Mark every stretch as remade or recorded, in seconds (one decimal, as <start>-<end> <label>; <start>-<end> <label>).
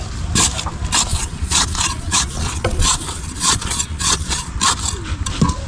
0.0-1.1 recorded; 1.1-4.5 remade; 4.5-5.7 recorded